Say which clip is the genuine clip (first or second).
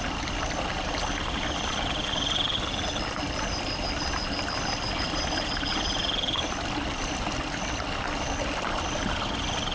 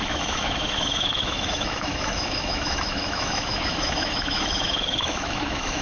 first